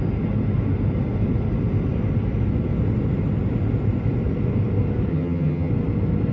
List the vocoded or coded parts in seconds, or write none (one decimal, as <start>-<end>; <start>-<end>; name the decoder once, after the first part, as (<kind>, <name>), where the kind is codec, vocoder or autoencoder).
5.1-5.7 (vocoder, HiFi-GAN)

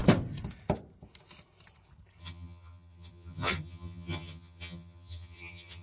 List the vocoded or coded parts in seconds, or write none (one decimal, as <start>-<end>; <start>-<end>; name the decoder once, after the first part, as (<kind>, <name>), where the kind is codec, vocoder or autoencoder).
2.2-5.8 (vocoder, HiFi-GAN)

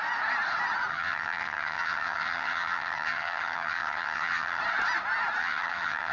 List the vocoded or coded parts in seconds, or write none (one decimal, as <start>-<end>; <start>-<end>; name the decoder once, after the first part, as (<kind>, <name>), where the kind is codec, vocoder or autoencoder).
0.9-4.6 (vocoder, HiFi-GAN); 5.4-6.1

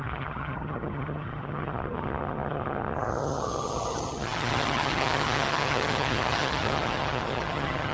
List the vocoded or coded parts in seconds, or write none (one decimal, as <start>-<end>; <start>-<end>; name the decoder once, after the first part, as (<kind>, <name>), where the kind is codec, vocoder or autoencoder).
0.0-7.9 (vocoder, HiFi-GAN)

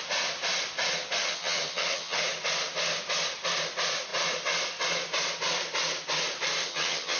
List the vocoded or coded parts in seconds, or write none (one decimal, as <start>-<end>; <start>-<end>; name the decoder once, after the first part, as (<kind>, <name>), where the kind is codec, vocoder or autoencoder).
1.2-2.2 (vocoder, HiFi-GAN); 6.6-7.2

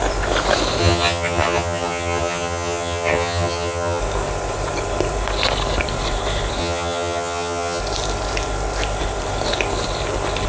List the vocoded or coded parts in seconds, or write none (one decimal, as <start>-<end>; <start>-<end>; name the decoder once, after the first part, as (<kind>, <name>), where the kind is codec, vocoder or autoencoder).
0.8-4.0 (vocoder, HiFi-GAN); 6.6-7.8

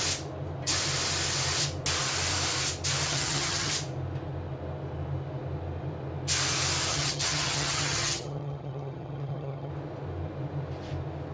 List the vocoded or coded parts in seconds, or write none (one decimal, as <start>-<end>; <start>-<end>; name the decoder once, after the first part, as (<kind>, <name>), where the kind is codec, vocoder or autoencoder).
3.1-3.7 (vocoder, HiFi-GAN); 6.9-9.7